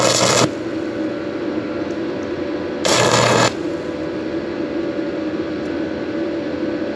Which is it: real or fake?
real